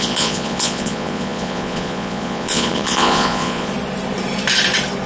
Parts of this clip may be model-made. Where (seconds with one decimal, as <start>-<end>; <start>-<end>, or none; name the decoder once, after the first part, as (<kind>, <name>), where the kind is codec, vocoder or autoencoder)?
0.0-3.7 (vocoder, Vocos)